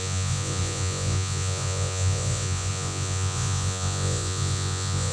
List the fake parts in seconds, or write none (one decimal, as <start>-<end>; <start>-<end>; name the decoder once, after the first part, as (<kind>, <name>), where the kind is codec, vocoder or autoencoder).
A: 0.0-5.1 (vocoder, Vocos)